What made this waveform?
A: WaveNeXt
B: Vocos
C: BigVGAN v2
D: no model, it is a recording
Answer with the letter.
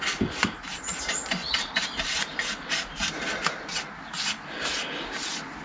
D